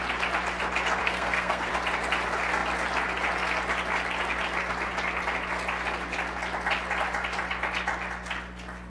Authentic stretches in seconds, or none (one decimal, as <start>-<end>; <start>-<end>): 0.0-1.0; 1.7-8.9